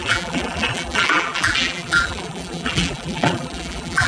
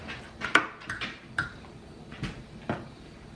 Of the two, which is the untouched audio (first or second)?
second